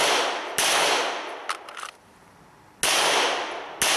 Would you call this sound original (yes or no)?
yes